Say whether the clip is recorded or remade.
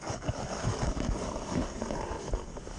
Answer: remade